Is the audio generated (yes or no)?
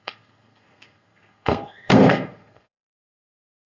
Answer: yes